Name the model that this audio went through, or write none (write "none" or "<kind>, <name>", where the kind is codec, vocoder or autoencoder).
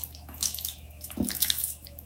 autoencoder, DAC-VAE